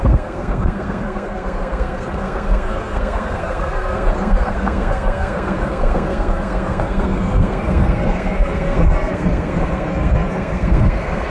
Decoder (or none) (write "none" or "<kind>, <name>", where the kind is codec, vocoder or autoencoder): codec, SNAC